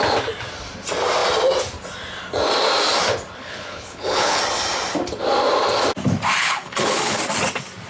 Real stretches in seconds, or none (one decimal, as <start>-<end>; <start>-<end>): 0.0-3.4; 4.4-6.4; 7.2-7.9